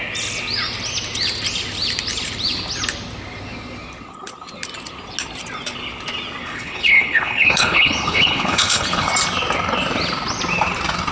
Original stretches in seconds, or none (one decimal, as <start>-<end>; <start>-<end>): 0.0-6.4; 9.1-11.1